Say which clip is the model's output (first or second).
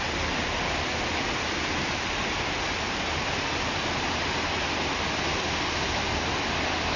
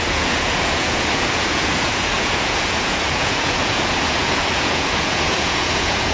second